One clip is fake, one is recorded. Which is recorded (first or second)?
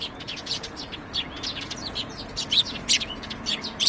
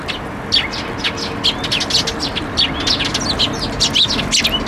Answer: second